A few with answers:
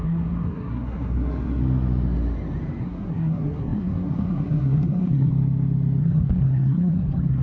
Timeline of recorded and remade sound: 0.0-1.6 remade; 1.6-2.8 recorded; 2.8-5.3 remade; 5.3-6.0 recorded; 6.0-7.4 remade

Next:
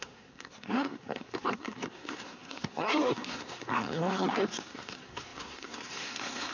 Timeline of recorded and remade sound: 0.0-6.5 remade

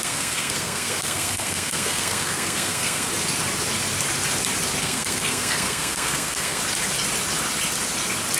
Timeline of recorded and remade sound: 0.0-3.1 remade; 3.1-4.8 recorded; 4.8-6.6 remade; 6.6-8.4 recorded

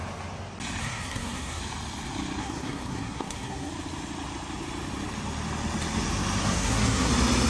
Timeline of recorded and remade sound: 0.0-0.8 recorded; 0.8-1.6 remade; 1.6-2.4 recorded; 2.4-3.7 remade; 3.7-6.4 recorded; 6.4-7.1 remade; 7.1-7.5 recorded

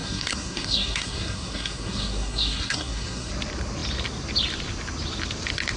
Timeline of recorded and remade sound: 0.0-3.3 remade; 3.3-5.8 recorded

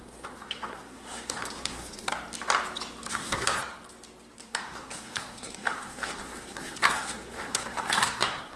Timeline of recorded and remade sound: 0.0-2.1 remade; 2.1-3.1 recorded; 3.1-3.6 remade; 3.6-4.4 recorded; 4.4-8.6 remade